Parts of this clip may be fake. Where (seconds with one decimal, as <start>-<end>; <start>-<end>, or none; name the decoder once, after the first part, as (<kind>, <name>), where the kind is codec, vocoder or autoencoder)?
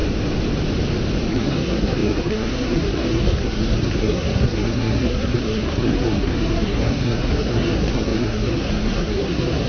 1.3-9.7 (codec, SNAC)